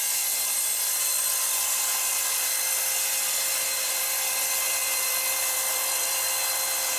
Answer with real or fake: fake